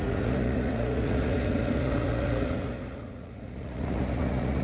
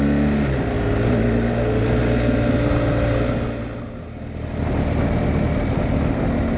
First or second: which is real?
second